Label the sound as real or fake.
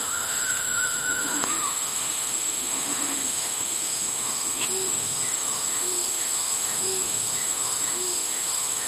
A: fake